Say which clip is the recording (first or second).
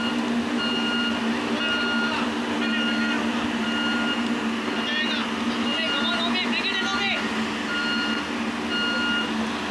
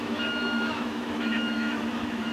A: first